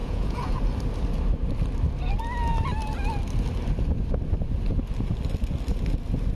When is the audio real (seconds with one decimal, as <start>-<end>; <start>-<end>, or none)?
0.6-6.3